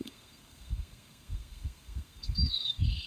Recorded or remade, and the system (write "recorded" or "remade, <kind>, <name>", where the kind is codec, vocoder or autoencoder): remade, codec, SNAC